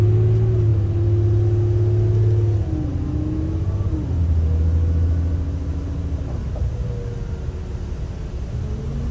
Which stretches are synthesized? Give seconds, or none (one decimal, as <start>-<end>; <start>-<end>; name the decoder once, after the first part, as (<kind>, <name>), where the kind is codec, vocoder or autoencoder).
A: none